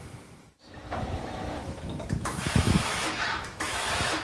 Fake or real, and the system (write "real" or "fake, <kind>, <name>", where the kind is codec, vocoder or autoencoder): fake, autoencoder, DAC-VAE